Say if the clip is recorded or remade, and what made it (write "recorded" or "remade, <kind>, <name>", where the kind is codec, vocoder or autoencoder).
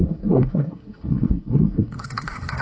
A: remade, codec, SNAC